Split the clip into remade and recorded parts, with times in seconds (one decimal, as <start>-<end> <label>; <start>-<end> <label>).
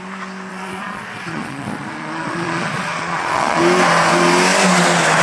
0.0-0.5 recorded; 0.5-3.6 remade; 3.6-5.2 recorded